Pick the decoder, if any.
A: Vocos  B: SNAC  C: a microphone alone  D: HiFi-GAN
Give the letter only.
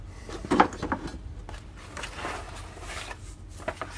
C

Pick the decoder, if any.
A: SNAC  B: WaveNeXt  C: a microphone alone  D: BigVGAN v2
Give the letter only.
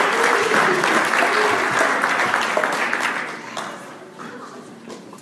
C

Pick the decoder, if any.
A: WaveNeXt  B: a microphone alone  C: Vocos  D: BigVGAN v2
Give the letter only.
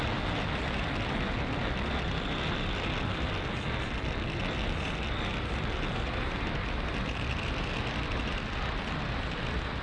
B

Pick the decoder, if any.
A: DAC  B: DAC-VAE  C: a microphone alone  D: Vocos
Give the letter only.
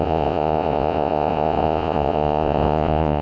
D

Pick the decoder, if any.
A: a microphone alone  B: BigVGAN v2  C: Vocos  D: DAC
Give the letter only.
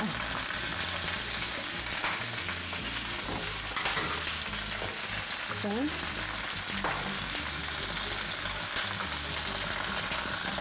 A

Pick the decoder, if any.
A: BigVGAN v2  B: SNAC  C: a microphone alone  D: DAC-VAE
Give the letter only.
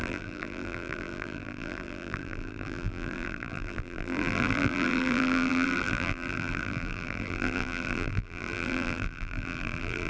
A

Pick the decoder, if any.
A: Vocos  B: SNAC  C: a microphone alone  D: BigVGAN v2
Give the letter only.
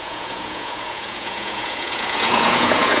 A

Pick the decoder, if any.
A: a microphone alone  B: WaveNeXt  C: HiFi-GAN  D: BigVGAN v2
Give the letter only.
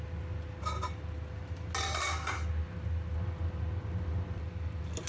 A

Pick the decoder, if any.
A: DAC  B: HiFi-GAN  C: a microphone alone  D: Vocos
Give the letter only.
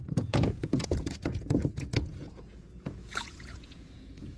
D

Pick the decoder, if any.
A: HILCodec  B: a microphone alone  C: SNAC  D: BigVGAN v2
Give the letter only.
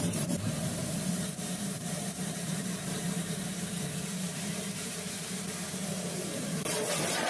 D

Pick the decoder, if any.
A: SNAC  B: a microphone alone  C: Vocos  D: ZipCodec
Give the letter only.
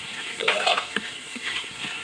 A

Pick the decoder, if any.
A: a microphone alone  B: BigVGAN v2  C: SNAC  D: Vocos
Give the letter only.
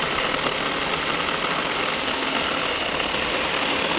A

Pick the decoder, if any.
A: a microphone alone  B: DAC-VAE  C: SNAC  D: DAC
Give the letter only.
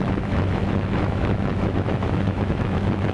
B